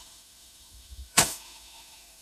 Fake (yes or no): yes